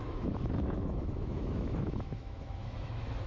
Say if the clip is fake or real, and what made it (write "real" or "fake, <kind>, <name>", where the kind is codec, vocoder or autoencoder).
fake, autoencoder, DAC-VAE